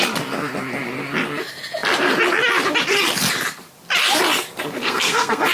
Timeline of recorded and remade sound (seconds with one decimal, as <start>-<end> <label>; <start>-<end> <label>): 0.0-4.8 recorded; 4.8-5.5 remade